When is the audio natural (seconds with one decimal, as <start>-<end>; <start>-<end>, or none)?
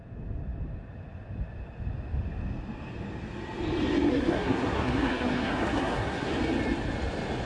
0.0-4.1; 6.3-7.5